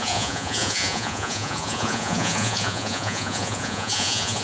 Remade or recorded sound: remade